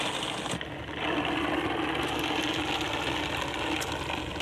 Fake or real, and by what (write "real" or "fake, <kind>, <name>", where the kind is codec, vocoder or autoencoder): real